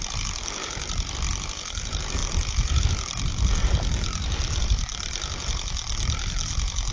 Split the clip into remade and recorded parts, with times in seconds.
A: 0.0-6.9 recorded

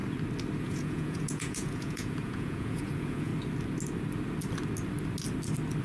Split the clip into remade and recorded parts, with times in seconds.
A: 0.0-0.6 recorded; 0.6-3.3 remade; 3.3-5.8 recorded

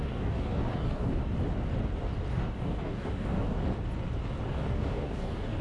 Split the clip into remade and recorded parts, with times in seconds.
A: 0.0-1.2 remade; 1.2-2.3 recorded; 2.3-3.6 remade; 3.6-4.5 recorded; 4.5-5.6 remade

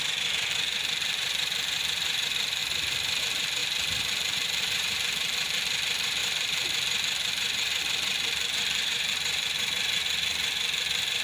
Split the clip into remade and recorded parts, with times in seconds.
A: 0.0-2.6 remade; 2.6-3.2 recorded; 3.2-11.2 remade

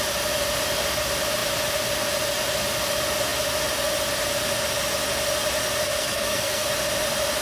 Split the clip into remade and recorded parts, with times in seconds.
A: 0.0-5.8 recorded; 5.8-6.7 remade; 6.7-7.4 recorded

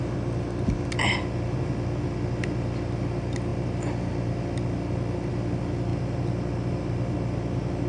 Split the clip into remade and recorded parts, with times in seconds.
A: 0.0-7.9 recorded

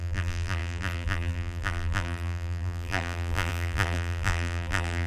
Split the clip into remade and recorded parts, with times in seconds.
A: 0.0-5.1 remade